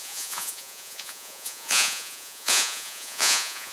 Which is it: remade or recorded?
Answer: remade